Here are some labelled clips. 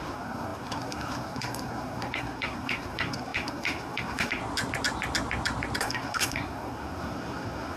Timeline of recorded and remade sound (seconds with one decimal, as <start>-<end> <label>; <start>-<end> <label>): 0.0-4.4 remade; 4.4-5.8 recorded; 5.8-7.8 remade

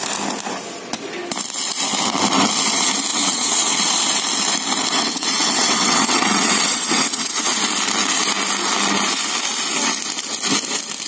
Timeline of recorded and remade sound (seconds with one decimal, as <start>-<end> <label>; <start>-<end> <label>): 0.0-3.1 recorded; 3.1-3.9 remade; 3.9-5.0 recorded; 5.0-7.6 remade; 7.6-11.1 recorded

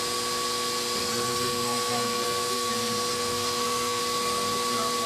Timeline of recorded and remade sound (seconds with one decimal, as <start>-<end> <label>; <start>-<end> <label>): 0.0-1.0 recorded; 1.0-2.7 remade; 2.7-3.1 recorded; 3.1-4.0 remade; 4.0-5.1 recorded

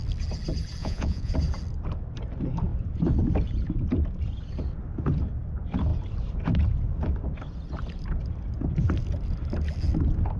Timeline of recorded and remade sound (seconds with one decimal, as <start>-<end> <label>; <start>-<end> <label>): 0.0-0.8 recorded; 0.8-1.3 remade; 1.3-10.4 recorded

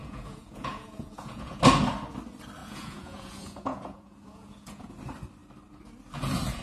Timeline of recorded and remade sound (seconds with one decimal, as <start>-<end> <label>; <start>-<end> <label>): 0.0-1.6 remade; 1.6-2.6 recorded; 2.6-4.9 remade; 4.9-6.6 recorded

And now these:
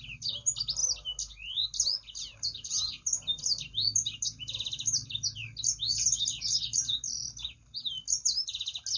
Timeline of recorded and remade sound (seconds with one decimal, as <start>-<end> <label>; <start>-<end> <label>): 0.0-9.0 recorded

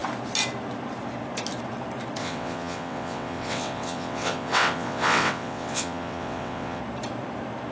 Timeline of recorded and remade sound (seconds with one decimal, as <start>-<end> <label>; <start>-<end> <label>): 0.0-2.2 recorded; 2.2-6.8 remade; 6.8-7.7 recorded

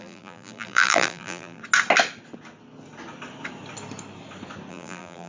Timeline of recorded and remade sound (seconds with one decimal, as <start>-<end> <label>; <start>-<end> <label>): 0.0-1.6 remade; 1.6-4.7 recorded; 4.7-5.3 remade